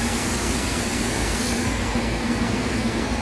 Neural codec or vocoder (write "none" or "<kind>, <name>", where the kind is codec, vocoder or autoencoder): codec, SNAC